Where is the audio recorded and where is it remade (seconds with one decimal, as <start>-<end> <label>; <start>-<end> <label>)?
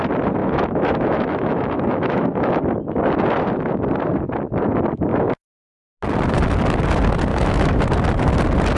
0.0-0.4 recorded; 0.4-2.6 remade; 2.6-5.1 recorded; 5.1-5.6 remade; 5.6-7.3 recorded; 7.3-7.8 remade; 7.8-8.8 recorded